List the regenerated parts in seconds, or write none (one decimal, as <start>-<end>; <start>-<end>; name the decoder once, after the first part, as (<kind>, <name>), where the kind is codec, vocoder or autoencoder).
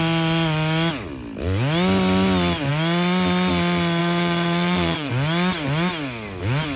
4.0-5.1 (vocoder, WaveNeXt)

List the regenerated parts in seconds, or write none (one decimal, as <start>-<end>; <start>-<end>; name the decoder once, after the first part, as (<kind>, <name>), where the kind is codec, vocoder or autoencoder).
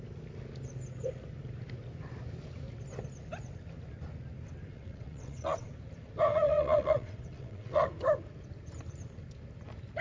4.7-5.7 (vocoder, WaveNeXt); 6.3-7.9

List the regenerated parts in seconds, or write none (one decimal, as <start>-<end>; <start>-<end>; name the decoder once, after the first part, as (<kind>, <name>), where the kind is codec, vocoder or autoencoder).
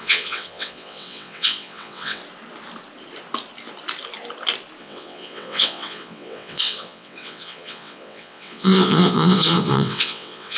0.0-2.2 (vocoder, WaveNeXt); 4.8-10.6